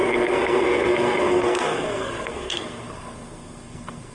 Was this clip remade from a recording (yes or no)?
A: yes